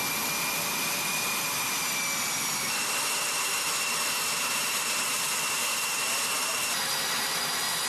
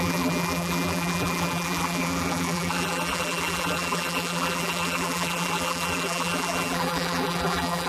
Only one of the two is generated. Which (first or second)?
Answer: second